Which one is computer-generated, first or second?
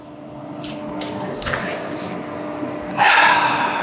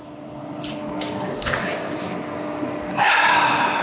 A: second